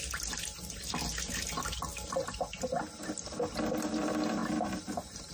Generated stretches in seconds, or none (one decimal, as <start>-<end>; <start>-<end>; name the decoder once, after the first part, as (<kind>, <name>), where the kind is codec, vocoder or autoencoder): none